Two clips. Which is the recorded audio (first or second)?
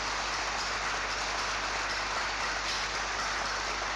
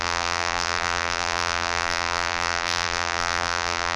first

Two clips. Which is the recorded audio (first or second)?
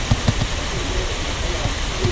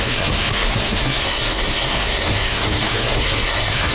first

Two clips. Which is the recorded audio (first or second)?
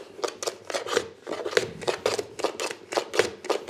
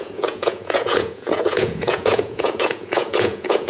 first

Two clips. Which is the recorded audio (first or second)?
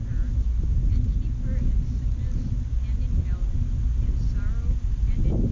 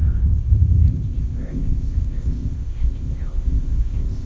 first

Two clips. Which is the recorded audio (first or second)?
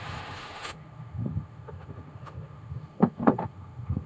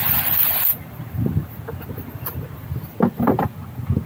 second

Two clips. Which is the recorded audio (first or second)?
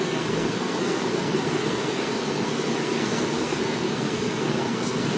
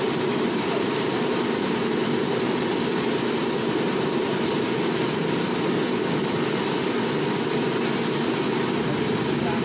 second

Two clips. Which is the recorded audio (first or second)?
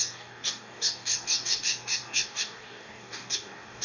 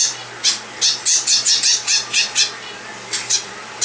second